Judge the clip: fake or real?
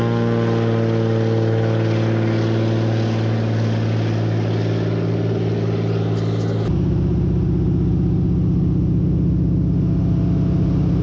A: real